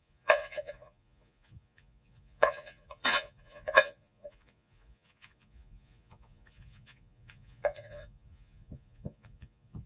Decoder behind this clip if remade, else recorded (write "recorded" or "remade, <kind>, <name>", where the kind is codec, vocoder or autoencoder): remade, vocoder, Vocos